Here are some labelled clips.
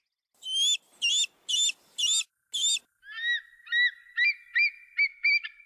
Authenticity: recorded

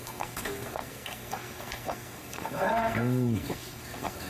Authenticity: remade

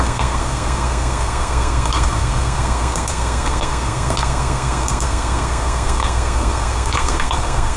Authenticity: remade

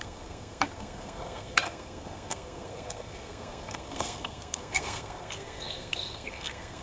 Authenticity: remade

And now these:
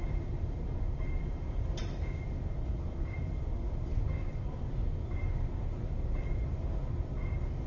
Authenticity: recorded